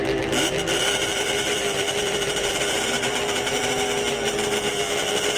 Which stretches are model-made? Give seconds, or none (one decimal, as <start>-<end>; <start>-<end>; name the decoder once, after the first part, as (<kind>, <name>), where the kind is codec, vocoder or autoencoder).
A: 1.1-4.3 (vocoder, BigVGAN v2)